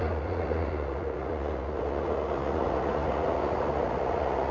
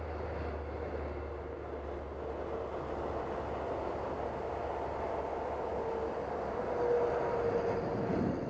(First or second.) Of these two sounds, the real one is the second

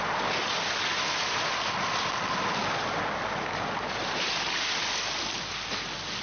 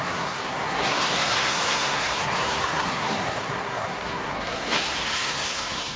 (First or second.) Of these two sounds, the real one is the first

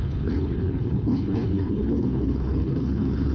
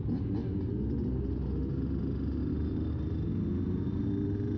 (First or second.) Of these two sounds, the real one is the second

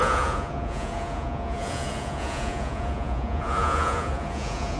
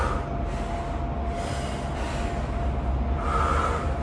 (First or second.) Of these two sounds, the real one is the second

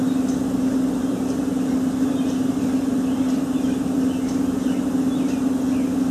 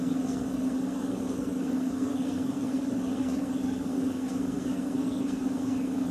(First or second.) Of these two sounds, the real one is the first